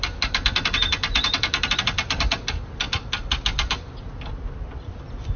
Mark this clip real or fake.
real